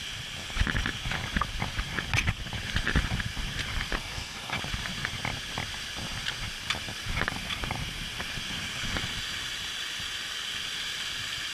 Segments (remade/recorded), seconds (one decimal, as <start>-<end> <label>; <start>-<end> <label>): 0.0-4.0 recorded; 4.0-4.6 remade; 4.6-11.5 recorded